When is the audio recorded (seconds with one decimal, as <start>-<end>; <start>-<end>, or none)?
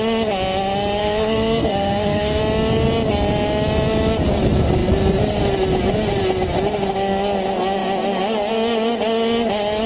0.0-1.0; 2.4-9.9